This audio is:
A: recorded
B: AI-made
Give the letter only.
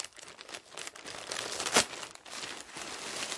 A